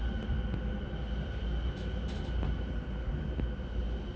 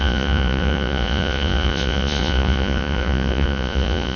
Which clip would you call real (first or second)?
first